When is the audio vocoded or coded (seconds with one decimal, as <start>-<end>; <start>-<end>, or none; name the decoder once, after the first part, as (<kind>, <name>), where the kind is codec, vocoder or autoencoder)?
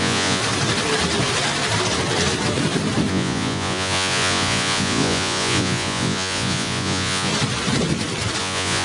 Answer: 0.0-0.4 (vocoder, Vocos); 3.1-7.3; 8.4-8.8